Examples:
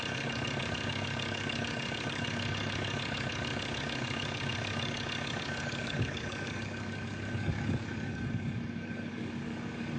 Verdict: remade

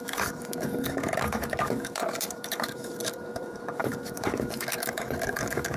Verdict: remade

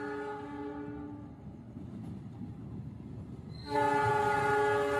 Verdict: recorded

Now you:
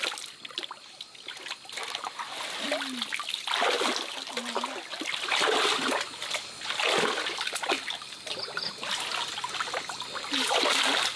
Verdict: recorded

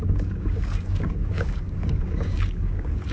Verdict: remade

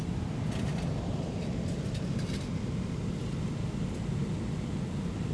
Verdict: recorded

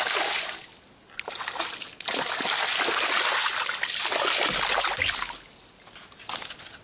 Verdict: recorded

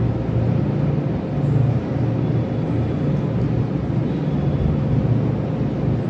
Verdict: recorded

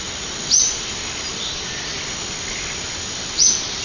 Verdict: recorded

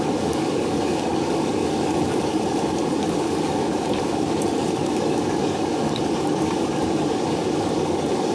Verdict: remade